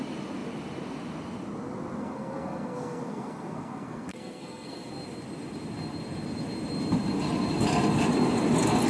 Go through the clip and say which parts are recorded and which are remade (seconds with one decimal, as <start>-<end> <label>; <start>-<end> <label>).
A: 0.0-2.0 recorded; 2.0-4.9 remade; 4.9-8.9 recorded